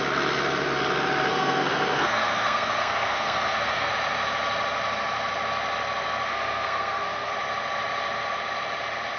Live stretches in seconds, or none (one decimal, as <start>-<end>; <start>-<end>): 0.0-1.3; 3.9-6.3; 7.3-9.2